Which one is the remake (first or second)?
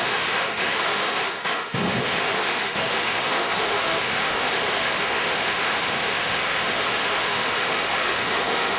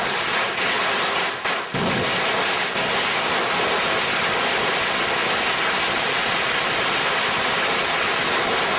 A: first